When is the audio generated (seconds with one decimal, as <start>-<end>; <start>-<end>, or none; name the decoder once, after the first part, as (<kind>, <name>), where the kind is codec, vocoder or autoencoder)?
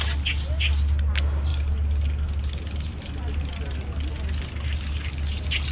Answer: none